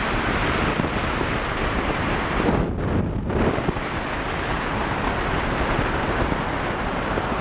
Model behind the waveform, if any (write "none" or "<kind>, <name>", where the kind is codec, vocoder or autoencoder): none